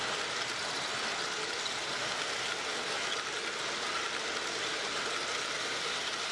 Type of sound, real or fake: real